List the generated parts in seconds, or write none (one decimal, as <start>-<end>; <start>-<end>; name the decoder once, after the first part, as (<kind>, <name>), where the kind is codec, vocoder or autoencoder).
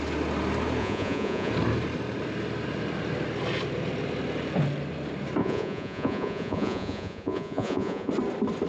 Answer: 0.8-1.5 (vocoder, Vocos); 5.4-8.1